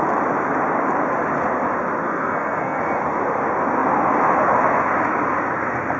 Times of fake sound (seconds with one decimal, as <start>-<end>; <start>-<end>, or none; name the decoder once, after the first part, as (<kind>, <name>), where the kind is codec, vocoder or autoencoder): 2.0-2.8 (codec, SNAC)